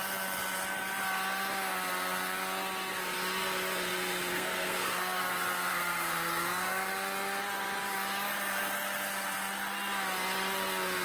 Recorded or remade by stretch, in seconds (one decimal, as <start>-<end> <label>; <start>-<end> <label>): 0.0-4.3 recorded; 4.3-5.2 remade; 5.2-5.7 recorded; 5.7-6.9 remade; 6.9-11.0 recorded